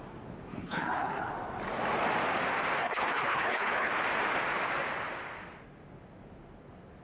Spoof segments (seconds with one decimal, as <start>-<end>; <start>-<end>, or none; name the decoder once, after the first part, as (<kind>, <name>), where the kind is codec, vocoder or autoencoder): 0.5-1.3 (codec, HILCodec); 2.8-3.9